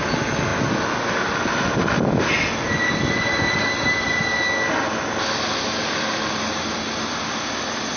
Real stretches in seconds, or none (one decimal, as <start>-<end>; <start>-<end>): 0.0-8.0

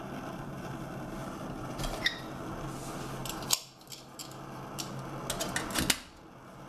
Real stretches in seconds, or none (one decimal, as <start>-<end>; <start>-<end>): 0.0-1.2; 2.2-6.7